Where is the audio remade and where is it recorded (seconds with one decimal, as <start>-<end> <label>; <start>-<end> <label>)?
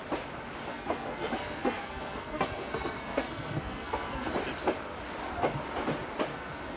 0.0-0.7 recorded; 0.7-4.3 remade; 4.3-6.3 recorded; 6.3-6.8 remade